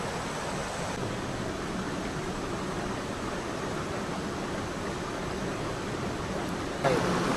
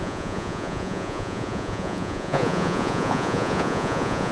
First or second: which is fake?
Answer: second